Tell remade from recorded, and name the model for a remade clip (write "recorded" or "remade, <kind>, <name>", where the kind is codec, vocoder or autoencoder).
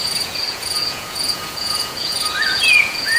remade, vocoder, Vocos